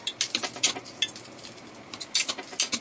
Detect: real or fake real